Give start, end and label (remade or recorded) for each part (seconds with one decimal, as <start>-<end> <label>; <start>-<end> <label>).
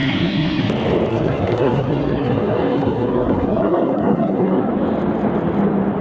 0.0-0.6 remade; 0.6-1.1 recorded; 1.1-4.7 remade; 4.7-6.0 recorded